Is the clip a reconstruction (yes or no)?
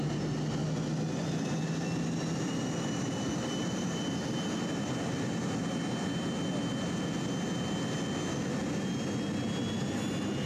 no